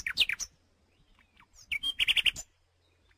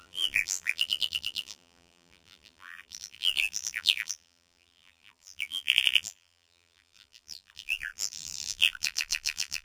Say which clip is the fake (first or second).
second